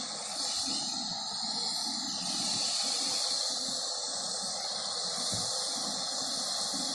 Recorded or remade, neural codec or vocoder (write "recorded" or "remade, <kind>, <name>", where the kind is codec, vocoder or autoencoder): recorded